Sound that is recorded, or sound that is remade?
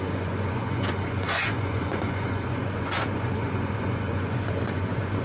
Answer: remade